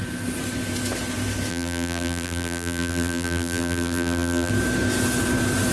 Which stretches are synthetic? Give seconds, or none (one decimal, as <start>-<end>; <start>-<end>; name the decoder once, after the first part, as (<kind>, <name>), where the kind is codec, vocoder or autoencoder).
1.5-4.5 (vocoder, BigVGAN v2)